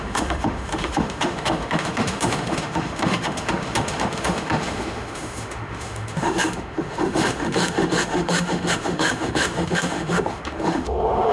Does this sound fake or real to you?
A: fake